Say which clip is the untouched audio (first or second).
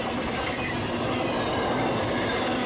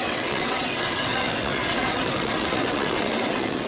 first